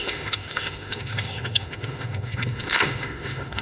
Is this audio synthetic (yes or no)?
yes